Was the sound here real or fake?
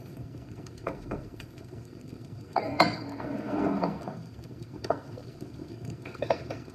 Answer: fake